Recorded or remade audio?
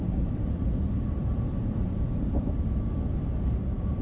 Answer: remade